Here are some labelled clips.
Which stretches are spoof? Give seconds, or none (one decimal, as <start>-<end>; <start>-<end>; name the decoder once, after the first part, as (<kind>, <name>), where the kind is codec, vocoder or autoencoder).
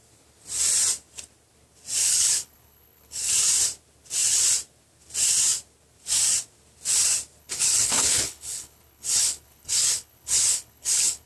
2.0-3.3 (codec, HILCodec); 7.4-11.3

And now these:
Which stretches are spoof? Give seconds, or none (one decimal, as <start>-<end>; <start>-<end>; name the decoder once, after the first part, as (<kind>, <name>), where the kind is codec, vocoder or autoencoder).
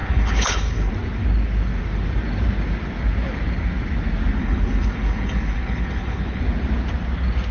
0.0-0.9 (codec, HILCodec); 4.4-6.4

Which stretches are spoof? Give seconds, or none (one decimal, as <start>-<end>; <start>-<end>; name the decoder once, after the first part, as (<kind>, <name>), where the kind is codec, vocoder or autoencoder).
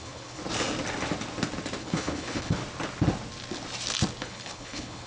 0.0-0.4 (codec, HILCodec); 1.8-2.6; 4.2-5.1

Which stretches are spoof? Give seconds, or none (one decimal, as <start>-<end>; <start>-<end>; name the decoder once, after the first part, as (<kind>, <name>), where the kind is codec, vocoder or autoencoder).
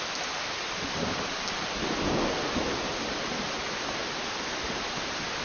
none